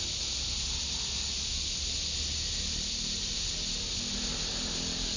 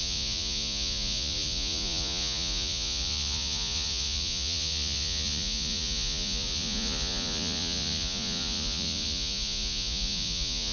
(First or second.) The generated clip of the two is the second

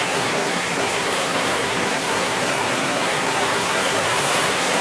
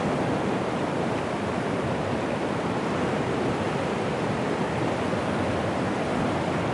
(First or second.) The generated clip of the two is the first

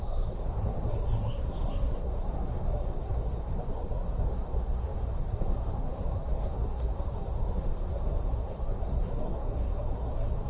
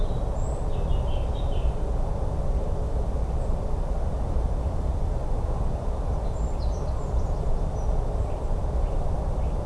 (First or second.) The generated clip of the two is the first